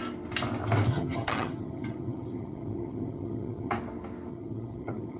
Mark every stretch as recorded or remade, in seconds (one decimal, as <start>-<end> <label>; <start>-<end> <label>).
0.0-0.9 recorded; 0.9-3.7 remade; 3.7-4.3 recorded; 4.3-5.2 remade